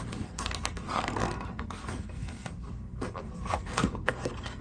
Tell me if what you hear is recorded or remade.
remade